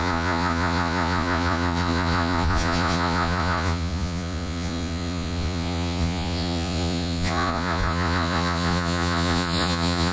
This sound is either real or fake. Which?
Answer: fake